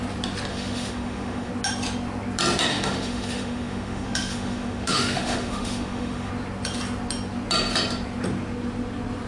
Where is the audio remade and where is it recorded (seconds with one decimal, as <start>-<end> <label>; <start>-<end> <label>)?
0.0-0.5 recorded; 0.5-1.5 remade; 1.5-2.7 recorded; 2.7-6.3 remade; 6.3-9.3 recorded